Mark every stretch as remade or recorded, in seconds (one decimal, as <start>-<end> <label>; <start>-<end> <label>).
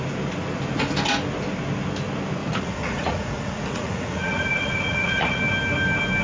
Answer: 0.0-2.4 recorded; 2.4-5.4 remade; 5.4-6.2 recorded